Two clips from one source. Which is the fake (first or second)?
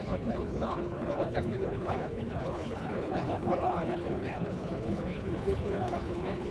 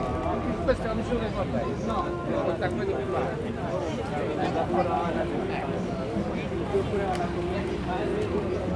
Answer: first